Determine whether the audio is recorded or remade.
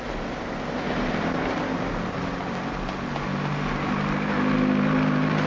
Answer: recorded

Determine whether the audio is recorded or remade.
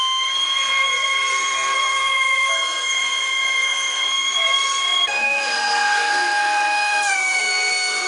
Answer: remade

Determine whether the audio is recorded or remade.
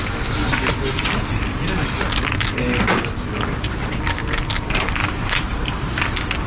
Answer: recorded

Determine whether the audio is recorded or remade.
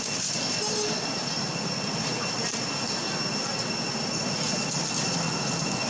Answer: recorded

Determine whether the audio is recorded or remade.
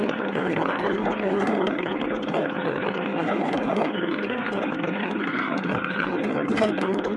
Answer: remade